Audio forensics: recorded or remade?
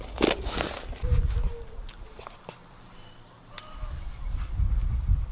recorded